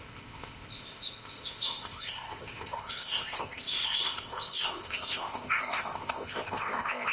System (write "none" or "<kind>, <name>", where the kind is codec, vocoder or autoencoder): codec, ZipCodec